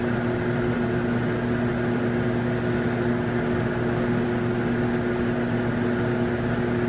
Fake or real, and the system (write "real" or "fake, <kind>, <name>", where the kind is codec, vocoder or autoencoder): real